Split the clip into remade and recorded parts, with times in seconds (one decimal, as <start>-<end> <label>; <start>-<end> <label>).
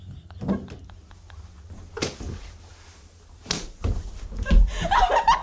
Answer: 0.0-5.4 recorded